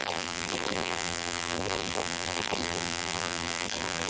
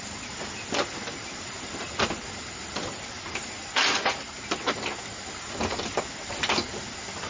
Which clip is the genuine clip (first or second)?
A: second